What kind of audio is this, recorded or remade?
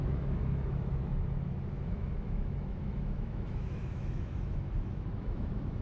remade